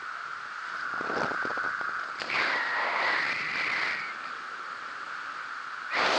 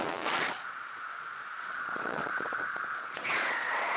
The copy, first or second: second